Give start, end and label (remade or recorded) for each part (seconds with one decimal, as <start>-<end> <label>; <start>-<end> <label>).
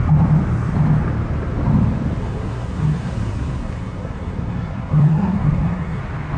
0.0-2.2 recorded; 2.2-6.0 remade; 6.0-6.4 recorded